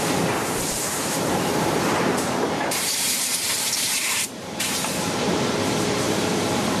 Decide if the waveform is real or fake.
fake